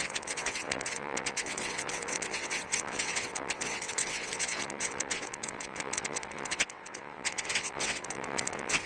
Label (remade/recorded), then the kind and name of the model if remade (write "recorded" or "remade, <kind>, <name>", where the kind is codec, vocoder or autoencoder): remade, vocoder, WaveNeXt